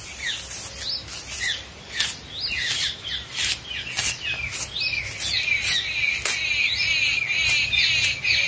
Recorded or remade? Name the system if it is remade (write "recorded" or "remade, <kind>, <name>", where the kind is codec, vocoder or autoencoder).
recorded